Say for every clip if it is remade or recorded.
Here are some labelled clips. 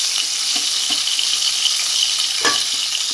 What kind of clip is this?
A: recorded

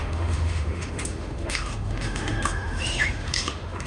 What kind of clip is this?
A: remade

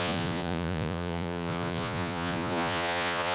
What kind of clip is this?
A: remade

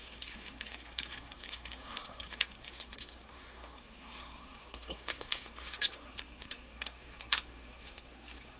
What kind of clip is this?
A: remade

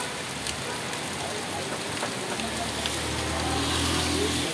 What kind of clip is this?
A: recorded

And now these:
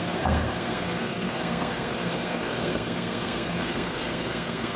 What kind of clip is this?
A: remade